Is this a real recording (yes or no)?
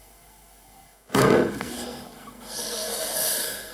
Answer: no